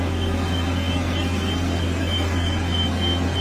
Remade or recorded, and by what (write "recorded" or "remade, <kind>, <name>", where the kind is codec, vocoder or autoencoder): remade, codec, SNAC